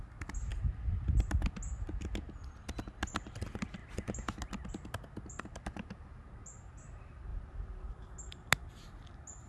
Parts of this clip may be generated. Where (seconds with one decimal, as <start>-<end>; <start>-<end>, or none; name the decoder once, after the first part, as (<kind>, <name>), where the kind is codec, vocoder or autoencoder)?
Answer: none